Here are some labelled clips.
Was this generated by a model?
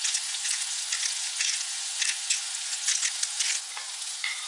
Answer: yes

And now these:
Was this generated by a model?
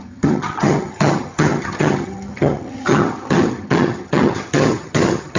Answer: yes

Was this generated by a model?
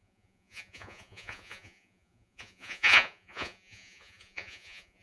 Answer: yes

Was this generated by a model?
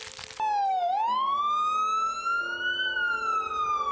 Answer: no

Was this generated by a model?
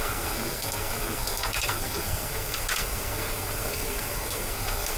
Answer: yes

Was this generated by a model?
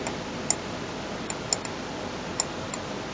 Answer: no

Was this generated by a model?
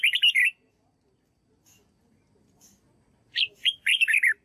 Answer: no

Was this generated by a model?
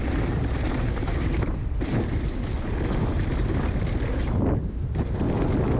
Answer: no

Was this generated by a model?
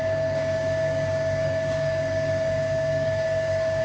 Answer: yes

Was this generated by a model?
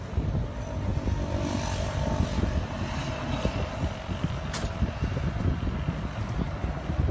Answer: no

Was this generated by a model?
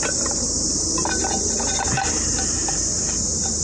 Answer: no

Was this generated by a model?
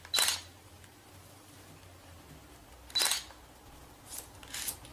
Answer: no